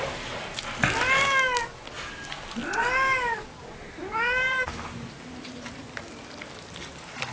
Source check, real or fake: real